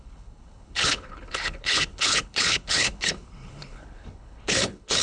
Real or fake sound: fake